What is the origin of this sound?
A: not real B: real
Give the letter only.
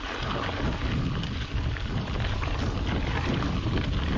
B